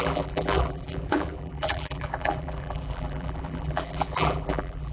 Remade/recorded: remade